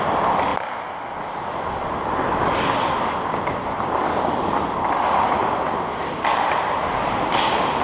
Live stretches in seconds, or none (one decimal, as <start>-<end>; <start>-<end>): 0.0-7.8